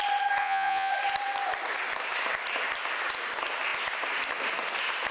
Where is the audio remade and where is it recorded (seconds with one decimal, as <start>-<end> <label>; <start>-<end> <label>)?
0.0-0.4 recorded; 0.4-0.9 remade; 0.9-5.1 recorded